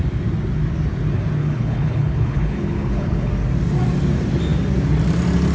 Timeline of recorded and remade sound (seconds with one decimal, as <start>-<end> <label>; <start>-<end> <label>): 0.0-1.4 recorded; 1.4-3.3 remade; 3.3-5.5 recorded